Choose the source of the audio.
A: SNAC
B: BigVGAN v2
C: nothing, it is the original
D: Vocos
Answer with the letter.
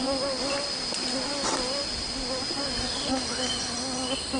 C